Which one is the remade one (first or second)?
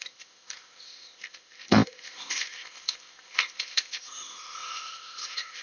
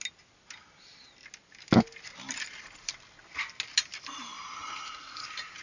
first